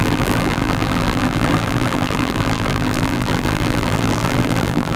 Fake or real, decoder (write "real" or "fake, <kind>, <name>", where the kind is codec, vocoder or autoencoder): fake, vocoder, BigVGAN v2